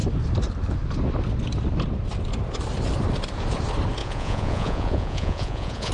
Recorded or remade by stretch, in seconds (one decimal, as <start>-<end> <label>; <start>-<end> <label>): 0.0-4.0 recorded; 4.0-5.9 remade